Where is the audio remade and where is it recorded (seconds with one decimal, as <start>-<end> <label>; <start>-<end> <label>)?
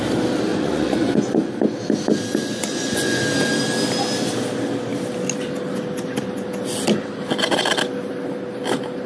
0.0-0.5 recorded; 0.5-1.5 remade; 1.5-2.4 recorded; 2.4-3.2 remade; 3.2-9.1 recorded